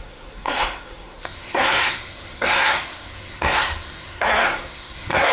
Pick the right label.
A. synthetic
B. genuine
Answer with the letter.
A